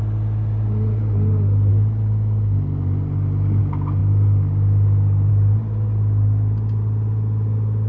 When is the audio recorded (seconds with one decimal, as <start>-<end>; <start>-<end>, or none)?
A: 0.0-7.9